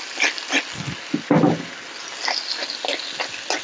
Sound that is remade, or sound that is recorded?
recorded